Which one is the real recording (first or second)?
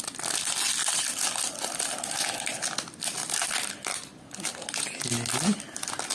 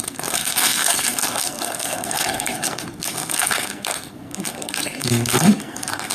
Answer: first